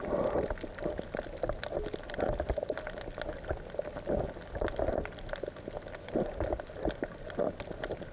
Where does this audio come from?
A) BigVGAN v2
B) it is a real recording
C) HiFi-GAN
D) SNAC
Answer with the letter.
B